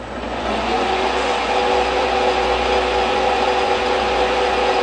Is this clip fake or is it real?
fake